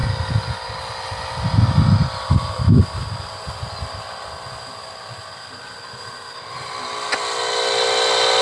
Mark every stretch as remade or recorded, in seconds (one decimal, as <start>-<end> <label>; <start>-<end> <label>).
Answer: 0.0-8.4 recorded